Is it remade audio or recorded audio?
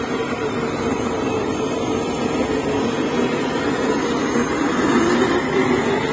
recorded